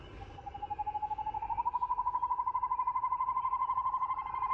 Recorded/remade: recorded